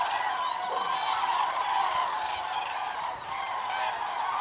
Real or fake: real